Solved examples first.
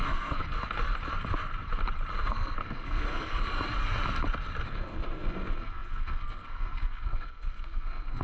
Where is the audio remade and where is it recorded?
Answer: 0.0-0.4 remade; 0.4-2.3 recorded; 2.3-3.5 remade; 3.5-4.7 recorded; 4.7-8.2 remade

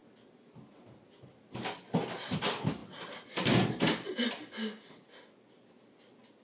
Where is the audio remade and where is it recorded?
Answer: 0.0-6.4 recorded

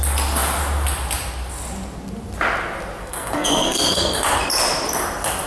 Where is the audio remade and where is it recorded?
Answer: 0.0-3.0 recorded; 3.0-4.2 remade; 4.2-5.5 recorded